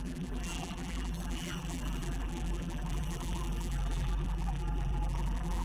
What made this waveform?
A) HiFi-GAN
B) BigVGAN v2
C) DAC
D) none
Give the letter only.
B